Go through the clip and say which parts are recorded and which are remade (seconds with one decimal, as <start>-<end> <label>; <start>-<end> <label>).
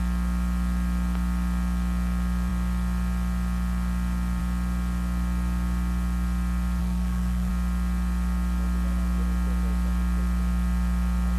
0.0-6.8 recorded; 6.8-7.5 remade; 7.5-11.4 recorded